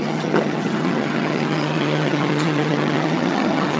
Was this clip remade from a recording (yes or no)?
yes